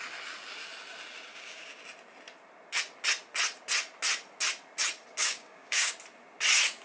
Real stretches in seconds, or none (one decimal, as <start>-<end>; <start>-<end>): 0.0-1.3; 1.8-5.2; 5.9-6.8